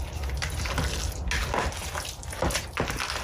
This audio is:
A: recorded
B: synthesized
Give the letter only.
A